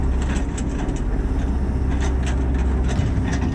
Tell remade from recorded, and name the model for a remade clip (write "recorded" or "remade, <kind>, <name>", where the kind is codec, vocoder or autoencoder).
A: recorded